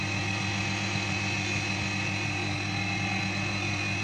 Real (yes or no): yes